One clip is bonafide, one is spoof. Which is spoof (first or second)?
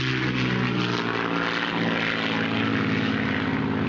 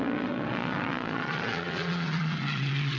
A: second